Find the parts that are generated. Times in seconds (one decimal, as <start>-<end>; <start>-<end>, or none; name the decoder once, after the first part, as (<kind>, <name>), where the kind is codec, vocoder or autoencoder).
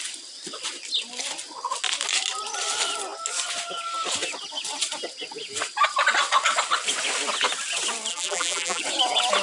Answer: 8.1-8.8 (vocoder, BigVGAN v2)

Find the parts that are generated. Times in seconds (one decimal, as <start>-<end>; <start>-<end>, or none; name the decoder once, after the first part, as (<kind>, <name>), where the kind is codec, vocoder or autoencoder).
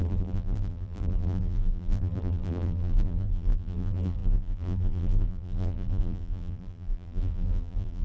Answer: 0.0-8.0 (vocoder, BigVGAN v2)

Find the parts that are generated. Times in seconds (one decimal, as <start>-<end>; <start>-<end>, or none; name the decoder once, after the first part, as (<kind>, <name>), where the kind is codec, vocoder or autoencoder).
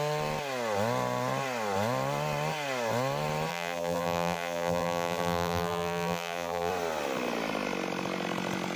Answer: 3.5-6.7 (vocoder, BigVGAN v2)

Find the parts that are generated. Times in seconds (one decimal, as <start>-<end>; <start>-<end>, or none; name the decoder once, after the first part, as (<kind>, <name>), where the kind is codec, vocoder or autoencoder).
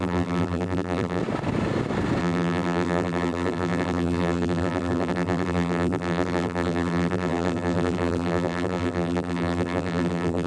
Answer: 0.0-1.2 (vocoder, BigVGAN v2); 2.2-10.5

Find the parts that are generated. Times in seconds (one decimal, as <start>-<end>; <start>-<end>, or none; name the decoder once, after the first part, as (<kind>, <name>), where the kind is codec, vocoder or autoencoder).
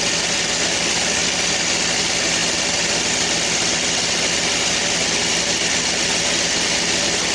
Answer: none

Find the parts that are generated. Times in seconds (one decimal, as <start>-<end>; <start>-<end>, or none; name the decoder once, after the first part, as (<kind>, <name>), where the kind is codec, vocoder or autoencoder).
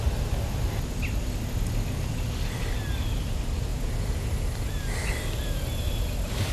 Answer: none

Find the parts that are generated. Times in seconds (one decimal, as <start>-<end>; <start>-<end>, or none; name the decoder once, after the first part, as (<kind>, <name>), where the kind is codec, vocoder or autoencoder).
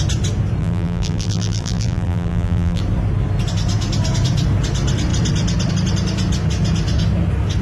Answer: 0.6-2.8 (vocoder, BigVGAN v2)